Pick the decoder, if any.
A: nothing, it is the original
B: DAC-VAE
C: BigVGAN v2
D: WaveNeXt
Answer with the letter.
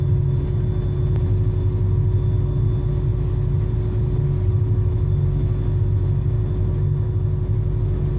A